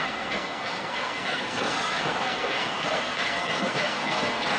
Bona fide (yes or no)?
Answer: no